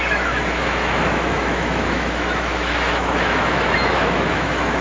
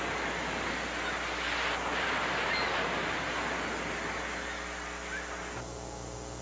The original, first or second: second